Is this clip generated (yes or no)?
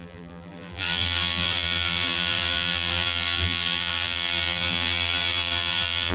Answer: yes